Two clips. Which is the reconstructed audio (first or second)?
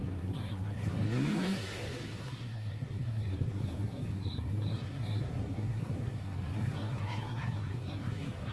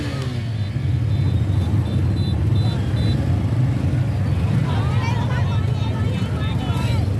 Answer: first